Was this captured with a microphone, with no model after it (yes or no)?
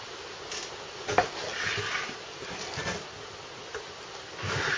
yes